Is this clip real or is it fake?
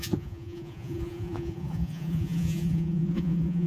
fake